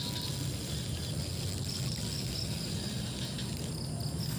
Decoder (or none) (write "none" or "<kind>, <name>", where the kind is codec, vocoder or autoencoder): none